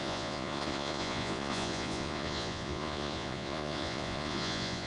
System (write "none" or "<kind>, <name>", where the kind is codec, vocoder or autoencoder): vocoder, Vocos